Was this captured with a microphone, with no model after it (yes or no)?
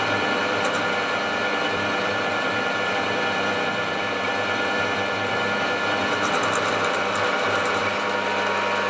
no